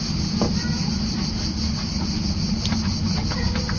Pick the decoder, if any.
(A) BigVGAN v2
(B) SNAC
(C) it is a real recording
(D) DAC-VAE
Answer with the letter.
C